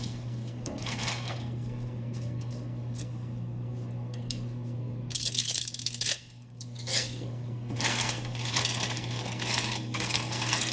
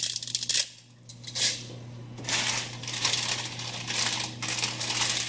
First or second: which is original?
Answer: second